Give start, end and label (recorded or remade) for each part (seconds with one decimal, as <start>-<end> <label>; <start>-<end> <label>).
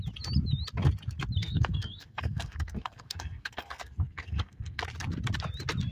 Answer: 0.0-1.4 recorded; 1.4-4.8 remade; 4.8-5.9 recorded